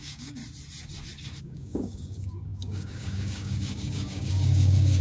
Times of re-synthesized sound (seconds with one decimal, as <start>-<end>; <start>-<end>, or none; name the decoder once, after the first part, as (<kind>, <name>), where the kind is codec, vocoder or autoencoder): 0.0-0.4 (codec, DAC); 1.4-5.0